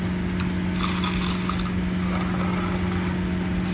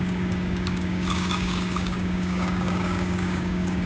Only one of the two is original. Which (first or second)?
first